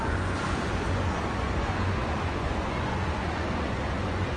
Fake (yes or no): yes